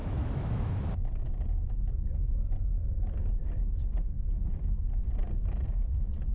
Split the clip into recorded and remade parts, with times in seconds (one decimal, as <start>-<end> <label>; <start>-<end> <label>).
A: 0.0-0.7 remade; 0.7-6.3 recorded